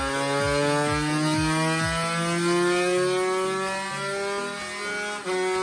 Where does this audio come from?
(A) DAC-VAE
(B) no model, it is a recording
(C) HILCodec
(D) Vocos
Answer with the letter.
B